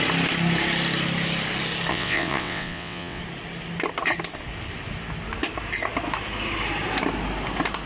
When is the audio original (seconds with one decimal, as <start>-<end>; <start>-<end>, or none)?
0.0-1.9; 3.2-7.9